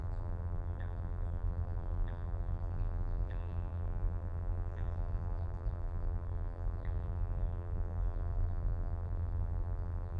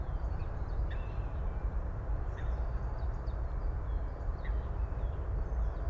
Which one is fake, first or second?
first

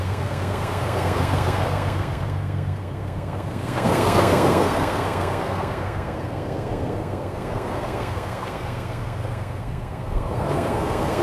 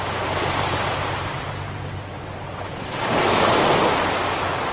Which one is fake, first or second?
first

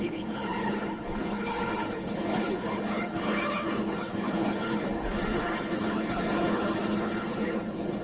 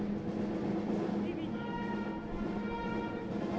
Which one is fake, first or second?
first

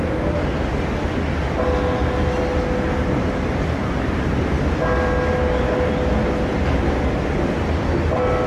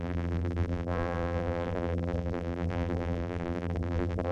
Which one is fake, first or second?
second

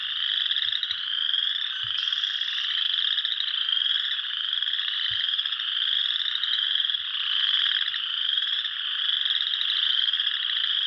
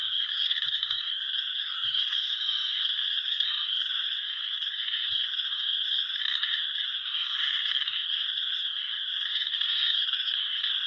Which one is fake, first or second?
second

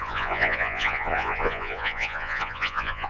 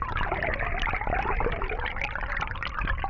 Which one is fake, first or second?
first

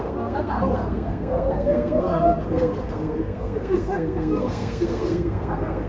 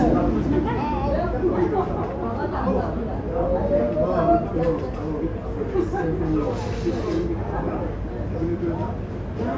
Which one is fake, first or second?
first